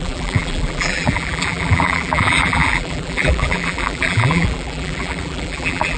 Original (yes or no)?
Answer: no